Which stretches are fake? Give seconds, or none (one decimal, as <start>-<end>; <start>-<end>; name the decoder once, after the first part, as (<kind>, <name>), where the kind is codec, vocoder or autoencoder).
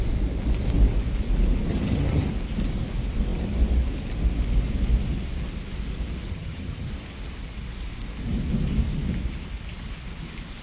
1.7-2.3 (vocoder, HiFi-GAN); 6.3-6.9